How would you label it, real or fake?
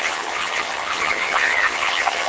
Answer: fake